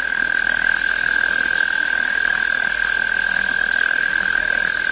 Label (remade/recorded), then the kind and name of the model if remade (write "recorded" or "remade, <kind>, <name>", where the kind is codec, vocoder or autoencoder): remade, codec, SNAC